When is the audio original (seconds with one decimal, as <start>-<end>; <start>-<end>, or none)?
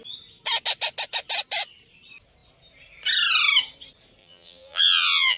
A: 0.0-4.2